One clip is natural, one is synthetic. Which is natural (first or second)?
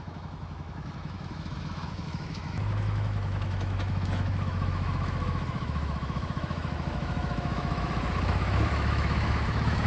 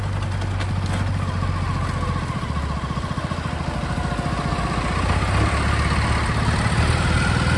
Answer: second